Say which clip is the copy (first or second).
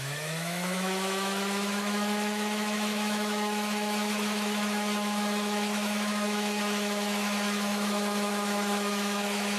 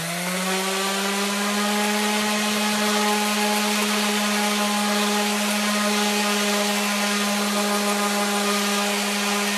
first